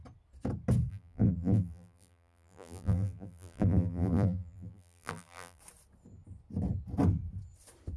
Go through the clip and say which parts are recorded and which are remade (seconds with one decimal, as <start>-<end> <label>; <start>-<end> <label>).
0.0-0.9 recorded; 0.9-5.6 remade; 5.6-8.0 recorded